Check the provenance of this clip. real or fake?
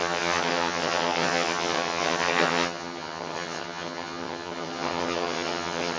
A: fake